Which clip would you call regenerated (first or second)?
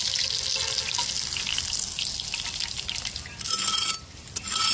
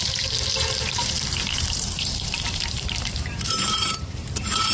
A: second